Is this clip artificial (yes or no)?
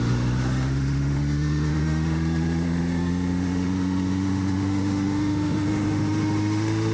yes